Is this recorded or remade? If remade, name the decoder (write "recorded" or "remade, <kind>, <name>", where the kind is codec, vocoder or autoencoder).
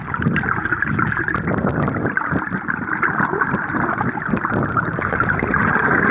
recorded